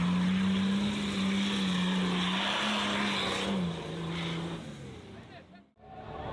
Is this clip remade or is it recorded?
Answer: recorded